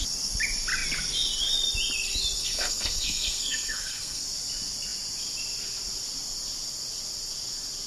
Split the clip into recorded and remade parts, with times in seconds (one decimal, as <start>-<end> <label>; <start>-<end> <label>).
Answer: 0.0-2.4 recorded; 2.4-4.2 remade; 4.2-7.9 recorded